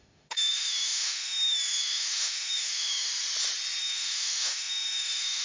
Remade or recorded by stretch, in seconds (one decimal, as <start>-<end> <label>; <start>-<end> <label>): 0.0-3.1 remade; 3.1-3.8 recorded; 3.8-5.4 remade